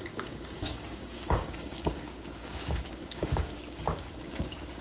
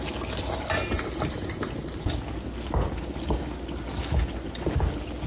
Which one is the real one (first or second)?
second